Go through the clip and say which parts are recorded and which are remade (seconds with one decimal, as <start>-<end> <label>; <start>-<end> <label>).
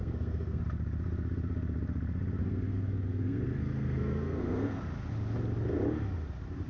0.0-0.6 remade; 0.6-2.4 recorded; 2.4-4.8 remade; 4.8-6.7 recorded